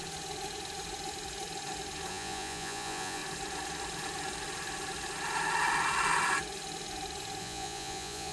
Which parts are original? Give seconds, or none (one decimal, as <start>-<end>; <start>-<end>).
0.0-2.1; 3.2-7.4